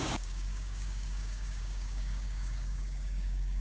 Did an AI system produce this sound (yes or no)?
yes